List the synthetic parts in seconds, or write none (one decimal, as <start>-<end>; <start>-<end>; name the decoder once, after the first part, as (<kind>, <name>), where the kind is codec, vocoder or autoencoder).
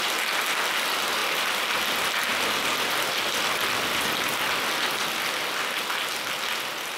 none